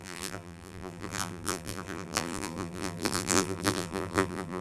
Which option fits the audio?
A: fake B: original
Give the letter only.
A